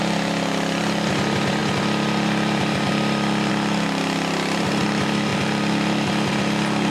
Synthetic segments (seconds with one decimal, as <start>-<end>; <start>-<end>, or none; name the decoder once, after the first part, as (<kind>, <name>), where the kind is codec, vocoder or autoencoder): none